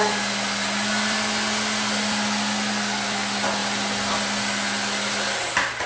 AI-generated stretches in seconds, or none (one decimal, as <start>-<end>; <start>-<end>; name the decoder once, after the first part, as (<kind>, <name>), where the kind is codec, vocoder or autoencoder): none